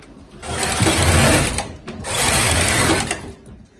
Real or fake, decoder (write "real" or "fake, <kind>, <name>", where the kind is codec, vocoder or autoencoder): real